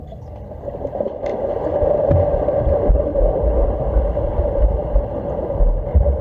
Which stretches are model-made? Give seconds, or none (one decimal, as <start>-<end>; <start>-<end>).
none